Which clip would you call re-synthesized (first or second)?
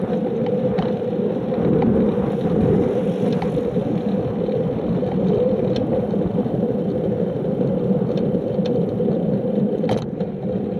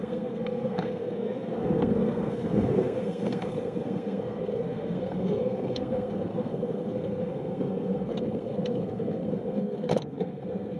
second